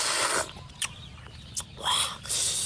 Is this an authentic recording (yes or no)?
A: yes